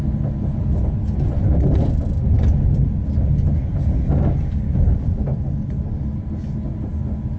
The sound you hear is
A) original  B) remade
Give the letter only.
A